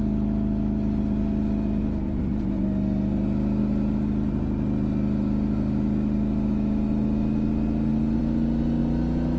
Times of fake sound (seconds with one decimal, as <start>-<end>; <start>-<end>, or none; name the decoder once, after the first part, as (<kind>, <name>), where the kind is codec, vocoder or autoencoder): none